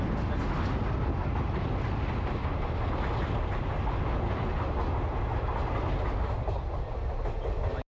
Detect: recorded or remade recorded